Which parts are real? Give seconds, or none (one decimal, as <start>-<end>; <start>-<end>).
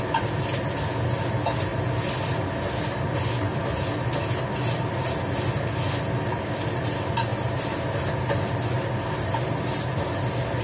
0.0-10.6